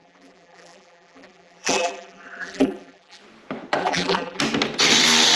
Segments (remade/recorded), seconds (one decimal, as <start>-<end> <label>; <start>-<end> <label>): 0.0-3.2 remade; 3.2-3.8 recorded; 3.8-4.4 remade; 4.4-5.4 recorded